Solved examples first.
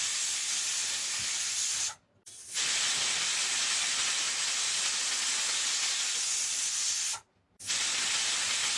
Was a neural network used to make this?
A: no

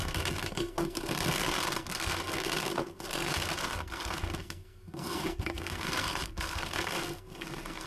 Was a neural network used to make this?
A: yes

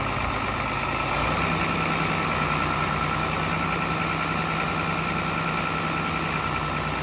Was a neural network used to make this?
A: no